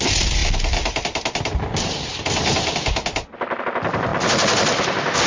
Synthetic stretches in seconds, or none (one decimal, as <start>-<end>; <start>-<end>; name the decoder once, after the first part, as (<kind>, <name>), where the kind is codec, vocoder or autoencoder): none